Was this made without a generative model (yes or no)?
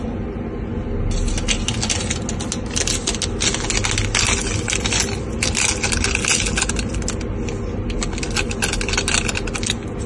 yes